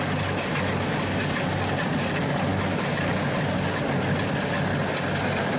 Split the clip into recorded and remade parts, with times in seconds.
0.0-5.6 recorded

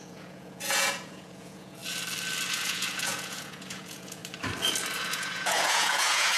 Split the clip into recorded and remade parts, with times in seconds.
0.0-1.8 remade; 1.8-2.5 recorded; 2.5-4.2 remade; 4.2-5.0 recorded; 5.0-6.4 remade

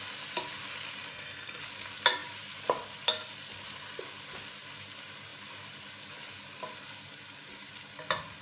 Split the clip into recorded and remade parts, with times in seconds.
0.0-1.1 recorded; 1.1-1.6 remade; 1.6-8.4 recorded

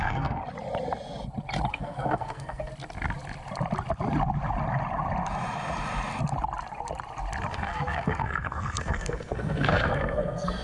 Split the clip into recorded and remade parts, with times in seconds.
0.0-0.4 remade; 0.4-1.7 recorded; 1.7-2.7 remade; 2.7-7.5 recorded; 7.5-10.6 remade

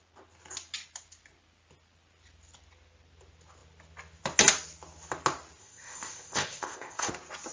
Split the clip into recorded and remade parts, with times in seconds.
0.0-5.6 recorded; 5.6-7.1 remade; 7.1-7.5 recorded

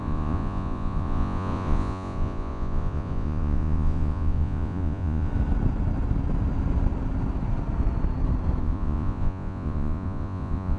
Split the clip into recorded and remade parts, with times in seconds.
0.0-5.3 remade; 5.3-8.6 recorded; 8.6-10.8 remade

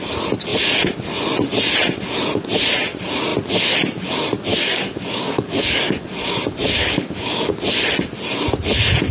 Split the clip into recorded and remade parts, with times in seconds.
0.0-4.5 recorded; 4.5-6.0 remade; 6.0-6.8 recorded; 6.8-7.5 remade; 7.5-9.1 recorded